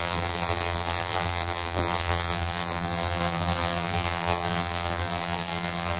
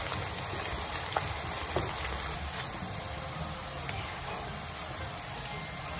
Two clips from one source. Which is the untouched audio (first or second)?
second